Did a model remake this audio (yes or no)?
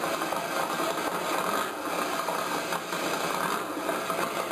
no